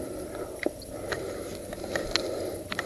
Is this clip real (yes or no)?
yes